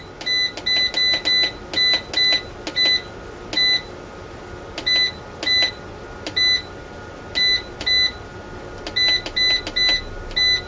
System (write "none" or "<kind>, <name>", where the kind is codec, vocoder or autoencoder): none